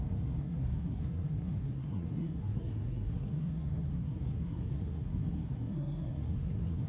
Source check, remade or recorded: remade